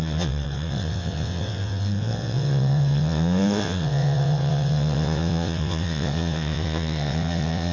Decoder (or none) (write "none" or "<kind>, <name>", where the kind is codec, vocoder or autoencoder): vocoder, WaveNeXt